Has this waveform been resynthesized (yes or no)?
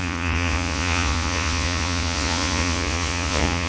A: yes